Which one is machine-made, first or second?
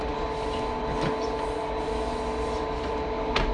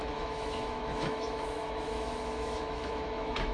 second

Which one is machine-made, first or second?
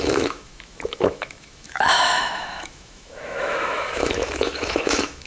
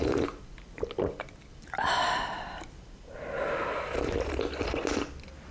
first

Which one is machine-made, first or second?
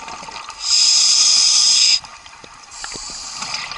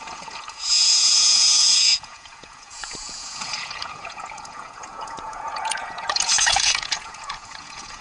second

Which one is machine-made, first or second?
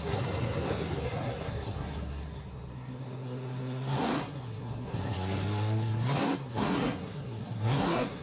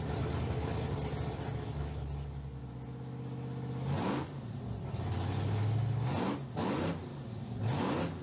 first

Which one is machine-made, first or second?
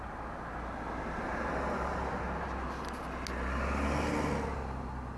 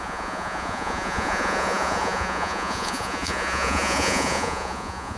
second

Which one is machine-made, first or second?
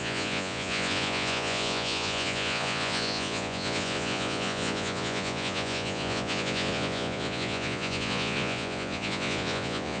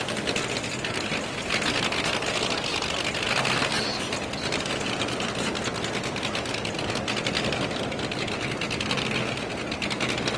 first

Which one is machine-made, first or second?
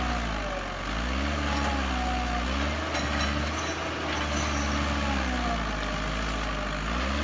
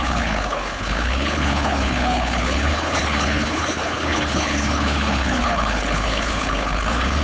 second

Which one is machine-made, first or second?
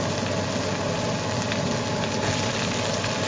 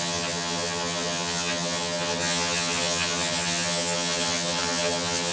second